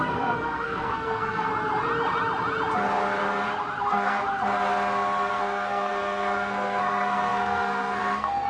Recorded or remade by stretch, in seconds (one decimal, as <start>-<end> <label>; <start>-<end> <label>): 0.0-1.5 remade; 1.5-3.8 recorded; 3.8-4.2 remade; 4.2-5.3 recorded; 5.3-8.5 remade